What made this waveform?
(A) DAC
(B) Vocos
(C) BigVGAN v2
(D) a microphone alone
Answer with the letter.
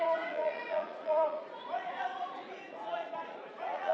B